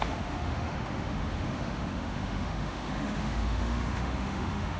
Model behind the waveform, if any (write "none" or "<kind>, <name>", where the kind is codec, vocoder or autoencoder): autoencoder, DAC-VAE